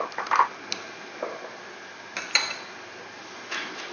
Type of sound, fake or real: real